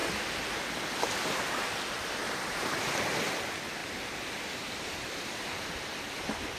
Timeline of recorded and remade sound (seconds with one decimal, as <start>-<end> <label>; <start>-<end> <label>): 0.0-1.0 remade; 1.0-3.8 recorded; 3.8-6.6 remade